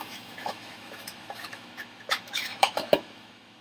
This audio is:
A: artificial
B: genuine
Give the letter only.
A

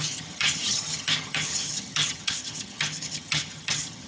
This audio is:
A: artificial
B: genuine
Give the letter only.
A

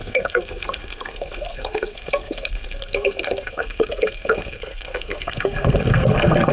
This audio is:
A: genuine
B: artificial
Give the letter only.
B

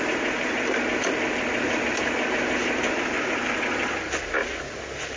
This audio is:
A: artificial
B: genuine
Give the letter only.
B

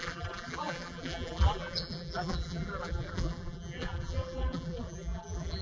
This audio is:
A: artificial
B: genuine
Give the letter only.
A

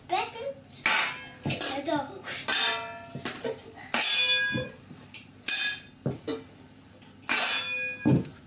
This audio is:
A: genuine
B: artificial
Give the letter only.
A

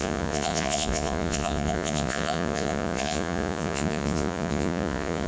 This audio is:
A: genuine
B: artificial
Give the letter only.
B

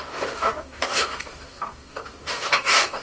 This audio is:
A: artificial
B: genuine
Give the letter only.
A